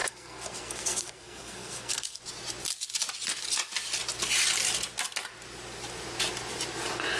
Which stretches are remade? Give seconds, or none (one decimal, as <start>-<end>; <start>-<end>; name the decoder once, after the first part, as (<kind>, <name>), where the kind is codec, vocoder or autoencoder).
0.0-2.2 (codec, SNAC)